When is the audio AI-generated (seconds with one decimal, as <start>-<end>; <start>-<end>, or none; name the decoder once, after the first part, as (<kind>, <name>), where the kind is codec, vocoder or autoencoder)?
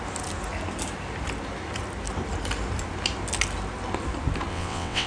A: 4.5-5.1 (vocoder, WaveNeXt)